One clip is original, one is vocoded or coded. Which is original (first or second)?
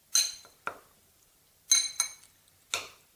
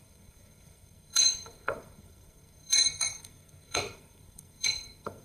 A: first